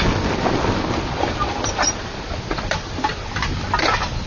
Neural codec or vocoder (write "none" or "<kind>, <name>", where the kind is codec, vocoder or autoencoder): none